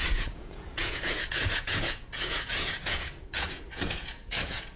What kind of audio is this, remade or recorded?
remade